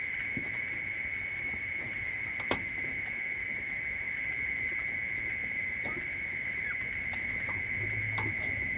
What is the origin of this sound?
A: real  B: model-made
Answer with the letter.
A